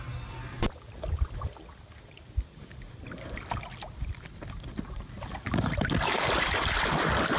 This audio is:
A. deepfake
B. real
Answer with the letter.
B